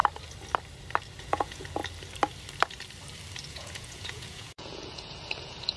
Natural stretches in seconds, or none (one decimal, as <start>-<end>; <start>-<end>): 0.0-1.2; 1.8-3.5